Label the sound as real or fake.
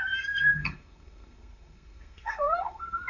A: fake